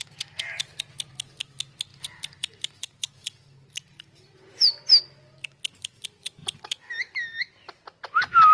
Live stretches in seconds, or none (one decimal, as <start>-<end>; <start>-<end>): 0.0-1.9; 4.7-8.5